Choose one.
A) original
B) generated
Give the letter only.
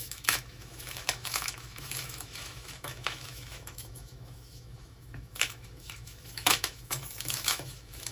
B